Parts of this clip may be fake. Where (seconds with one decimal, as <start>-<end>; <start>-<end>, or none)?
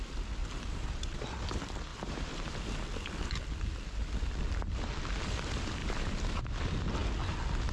0.4-1.3; 1.9-2.6; 5.8-6.4